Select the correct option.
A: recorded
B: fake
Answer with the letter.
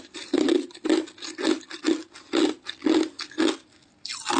A